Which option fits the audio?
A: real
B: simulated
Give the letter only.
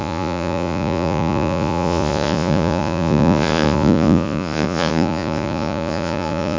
B